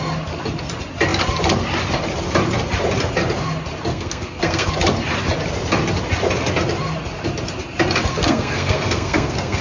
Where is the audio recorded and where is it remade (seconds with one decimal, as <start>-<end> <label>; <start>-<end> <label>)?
0.0-3.9 recorded; 3.9-4.7 remade; 4.7-8.1 recorded; 8.1-9.6 remade